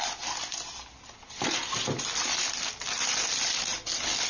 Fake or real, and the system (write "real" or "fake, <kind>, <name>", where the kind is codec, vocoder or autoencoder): real